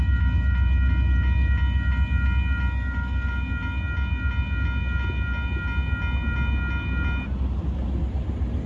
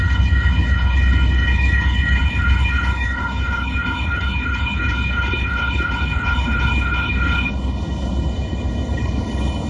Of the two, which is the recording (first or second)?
first